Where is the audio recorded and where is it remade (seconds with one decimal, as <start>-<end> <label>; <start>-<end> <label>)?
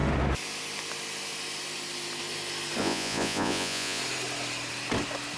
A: 0.0-2.8 recorded; 2.8-4.0 remade; 4.0-5.4 recorded